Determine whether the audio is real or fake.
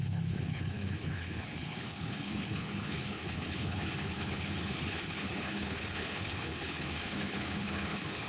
fake